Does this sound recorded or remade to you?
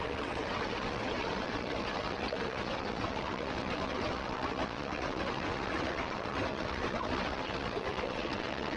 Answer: remade